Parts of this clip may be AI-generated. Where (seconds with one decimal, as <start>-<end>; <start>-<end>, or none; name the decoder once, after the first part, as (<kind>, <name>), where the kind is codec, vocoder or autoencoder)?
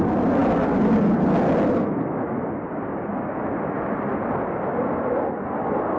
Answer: none